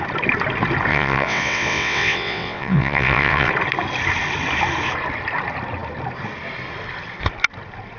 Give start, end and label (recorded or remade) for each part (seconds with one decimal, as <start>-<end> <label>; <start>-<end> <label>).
0.0-0.9 recorded; 0.9-3.5 remade; 3.5-8.0 recorded